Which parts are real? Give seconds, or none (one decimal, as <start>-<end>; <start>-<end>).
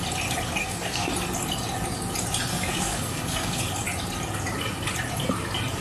0.0-0.6; 1.1-2.5; 3.6-5.8